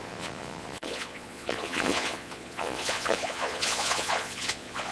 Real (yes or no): no